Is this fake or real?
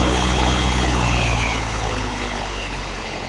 fake